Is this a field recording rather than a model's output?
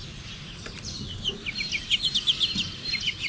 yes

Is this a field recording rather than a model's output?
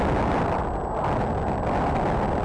yes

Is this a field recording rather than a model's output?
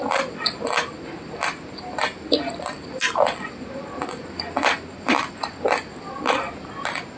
yes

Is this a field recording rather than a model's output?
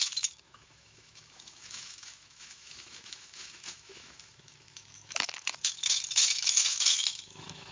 no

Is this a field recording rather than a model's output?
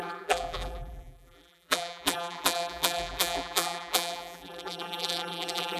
no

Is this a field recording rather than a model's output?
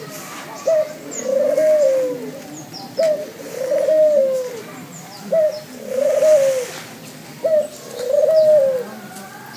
yes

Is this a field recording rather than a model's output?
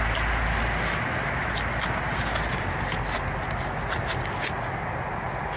yes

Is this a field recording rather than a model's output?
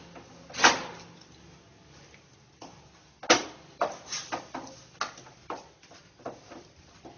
yes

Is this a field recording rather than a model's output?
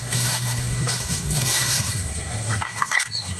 no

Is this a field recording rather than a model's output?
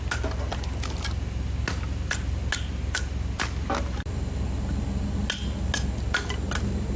yes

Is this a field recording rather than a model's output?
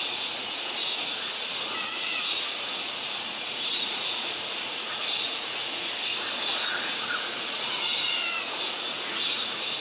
no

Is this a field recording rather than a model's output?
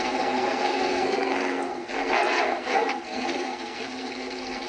no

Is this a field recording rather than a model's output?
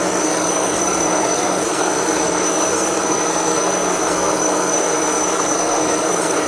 no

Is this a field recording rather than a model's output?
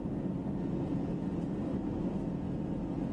yes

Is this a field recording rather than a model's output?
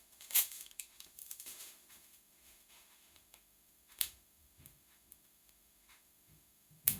no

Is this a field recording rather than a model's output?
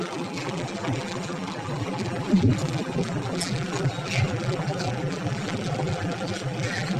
no